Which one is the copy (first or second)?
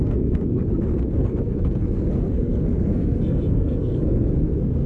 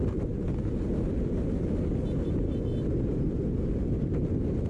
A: first